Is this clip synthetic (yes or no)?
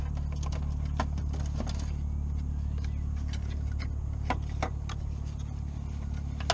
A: no